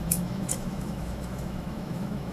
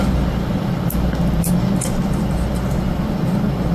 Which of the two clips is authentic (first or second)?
second